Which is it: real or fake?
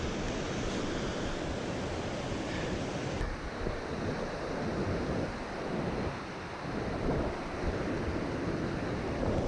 real